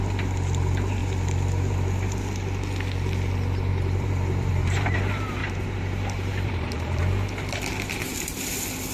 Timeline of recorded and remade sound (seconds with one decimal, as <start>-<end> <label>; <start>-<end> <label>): 0.0-3.7 recorded; 3.7-4.9 remade; 4.9-5.4 recorded; 5.4-7.0 remade; 7.0-8.9 recorded